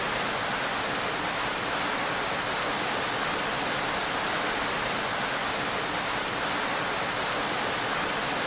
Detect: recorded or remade recorded